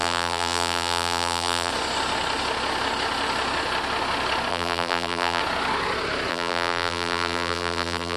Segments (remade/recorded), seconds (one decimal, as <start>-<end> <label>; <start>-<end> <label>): 0.0-1.7 remade; 1.7-4.5 recorded; 4.5-5.4 remade; 5.4-6.3 recorded; 6.3-8.2 remade